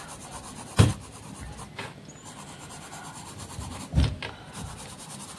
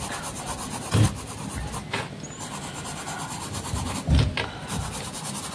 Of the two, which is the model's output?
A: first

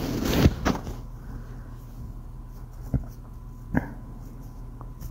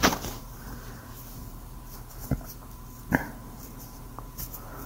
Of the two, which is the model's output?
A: second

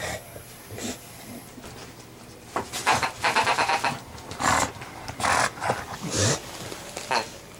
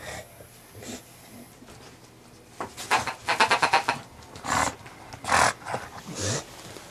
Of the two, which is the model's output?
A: first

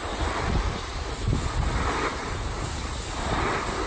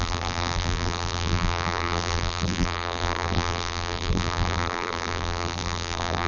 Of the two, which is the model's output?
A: second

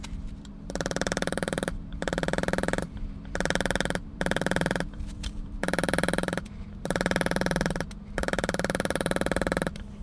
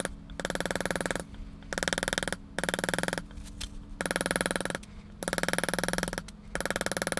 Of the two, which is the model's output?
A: first